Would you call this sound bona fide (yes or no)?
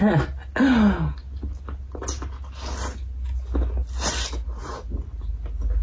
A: yes